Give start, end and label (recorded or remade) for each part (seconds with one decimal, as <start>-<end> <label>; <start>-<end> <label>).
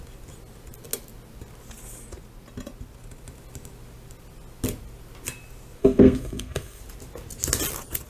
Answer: 0.0-5.8 recorded; 5.8-6.8 remade; 6.8-8.1 recorded